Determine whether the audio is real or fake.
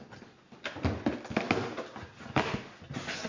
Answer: real